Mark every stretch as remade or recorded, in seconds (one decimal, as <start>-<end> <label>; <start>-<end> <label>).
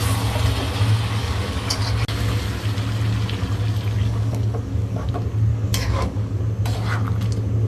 0.0-1.2 recorded; 1.2-1.8 remade; 1.8-4.0 recorded; 4.0-5.1 remade; 5.1-5.5 recorded; 5.5-6.4 remade; 6.4-7.7 recorded